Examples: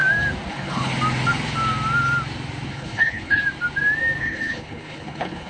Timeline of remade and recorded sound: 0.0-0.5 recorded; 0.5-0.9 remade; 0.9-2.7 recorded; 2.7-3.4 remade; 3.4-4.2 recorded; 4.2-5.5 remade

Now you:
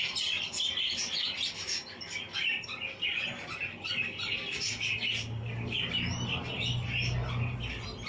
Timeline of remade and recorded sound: 0.0-8.1 recorded

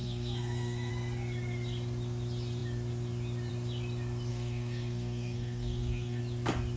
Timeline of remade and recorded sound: 0.0-0.9 remade; 0.9-4.3 recorded; 4.3-6.2 remade; 6.2-6.8 recorded

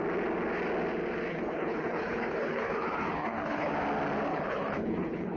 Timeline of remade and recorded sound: 0.0-1.3 recorded; 1.3-3.7 remade; 3.7-4.3 recorded; 4.3-5.4 remade

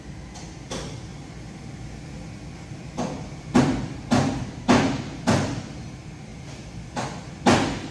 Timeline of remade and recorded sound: 0.0-7.9 recorded

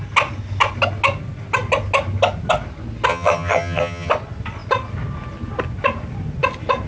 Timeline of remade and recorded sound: 0.0-3.1 recorded; 3.1-4.1 remade; 4.1-6.9 recorded